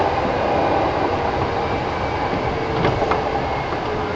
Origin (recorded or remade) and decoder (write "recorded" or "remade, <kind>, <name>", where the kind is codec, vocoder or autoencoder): recorded